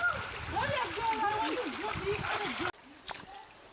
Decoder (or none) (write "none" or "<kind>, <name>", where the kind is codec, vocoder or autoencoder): none